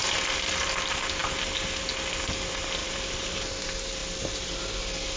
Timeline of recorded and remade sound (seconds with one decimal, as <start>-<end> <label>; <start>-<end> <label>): 0.0-0.7 remade; 0.7-2.8 recorded; 2.8-3.6 remade; 3.6-5.2 recorded